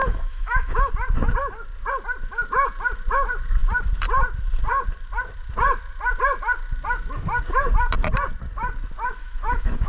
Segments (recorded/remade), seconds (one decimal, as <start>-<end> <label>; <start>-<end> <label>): 0.0-0.9 remade; 0.9-9.2 recorded; 9.2-9.9 remade